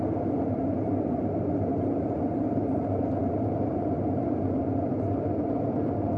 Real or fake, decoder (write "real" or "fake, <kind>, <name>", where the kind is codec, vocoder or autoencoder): real